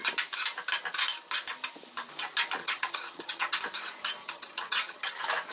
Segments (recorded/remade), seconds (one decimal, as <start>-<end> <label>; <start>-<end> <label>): 0.0-2.6 recorded; 2.6-3.6 remade; 3.6-4.2 recorded; 4.2-5.1 remade; 5.1-5.5 recorded